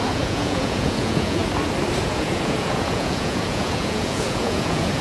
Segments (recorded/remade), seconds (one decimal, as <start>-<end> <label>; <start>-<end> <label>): 0.0-1.4 remade; 1.4-2.0 recorded; 2.0-5.0 remade